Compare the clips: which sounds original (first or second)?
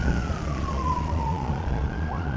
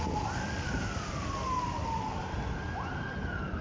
second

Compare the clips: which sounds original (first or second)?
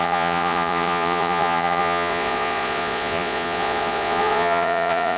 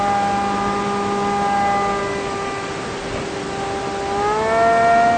second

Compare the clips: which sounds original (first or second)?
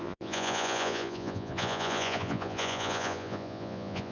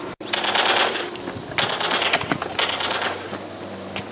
second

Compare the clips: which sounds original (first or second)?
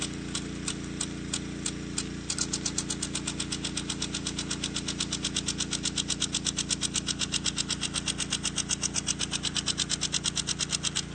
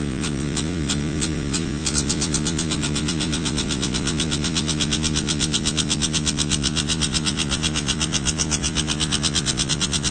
first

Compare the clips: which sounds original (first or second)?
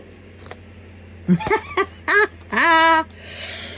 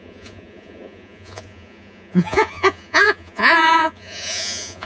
first